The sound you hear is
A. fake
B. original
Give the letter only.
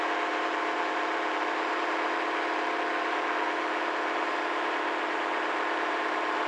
A